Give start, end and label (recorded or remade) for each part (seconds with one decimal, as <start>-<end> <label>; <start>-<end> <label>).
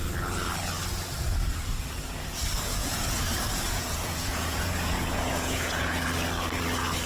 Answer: 0.0-2.8 recorded; 2.8-6.1 remade; 6.1-7.1 recorded